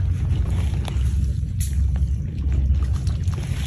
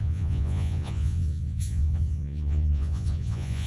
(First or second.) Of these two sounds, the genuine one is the first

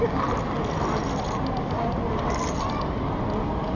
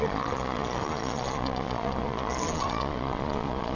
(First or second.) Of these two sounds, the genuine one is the first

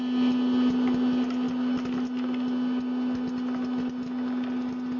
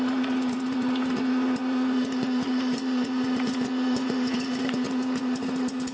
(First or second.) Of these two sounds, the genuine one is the first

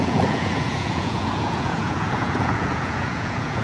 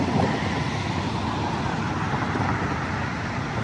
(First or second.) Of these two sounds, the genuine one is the second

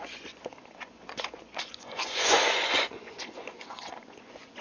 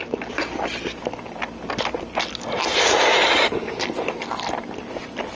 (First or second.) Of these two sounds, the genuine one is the second